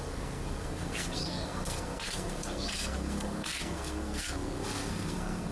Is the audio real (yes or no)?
no